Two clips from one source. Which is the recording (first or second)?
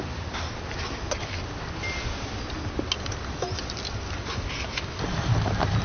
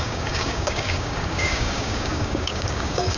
first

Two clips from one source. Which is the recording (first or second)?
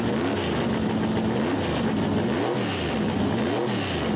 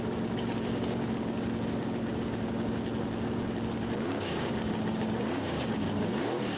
first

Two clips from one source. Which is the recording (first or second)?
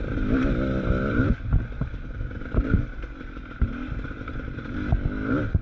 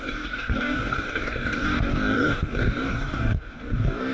first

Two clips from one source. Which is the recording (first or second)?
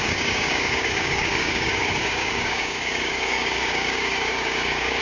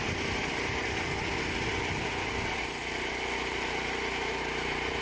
second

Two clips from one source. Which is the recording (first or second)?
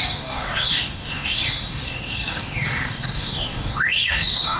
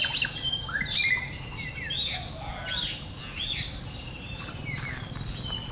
second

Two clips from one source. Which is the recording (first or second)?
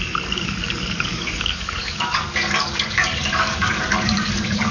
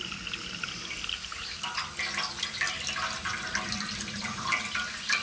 second